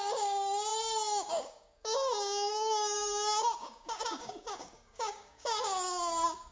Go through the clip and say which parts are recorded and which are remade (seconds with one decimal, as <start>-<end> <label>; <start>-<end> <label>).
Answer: 0.0-6.5 remade